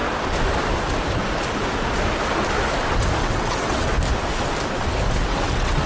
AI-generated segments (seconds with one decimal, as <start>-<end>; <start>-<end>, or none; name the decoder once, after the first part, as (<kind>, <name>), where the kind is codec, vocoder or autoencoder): 3.2-3.9 (vocoder, WaveNeXt); 5.2-5.9